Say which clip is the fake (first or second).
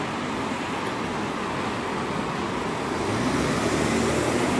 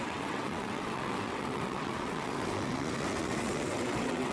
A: second